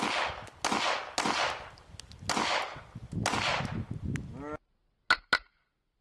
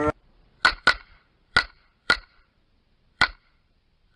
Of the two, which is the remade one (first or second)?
second